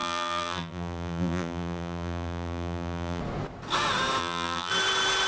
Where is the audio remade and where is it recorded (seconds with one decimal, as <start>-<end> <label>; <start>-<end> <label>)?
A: 0.0-3.2 remade; 3.2-4.2 recorded; 4.2-4.7 remade; 4.7-5.3 recorded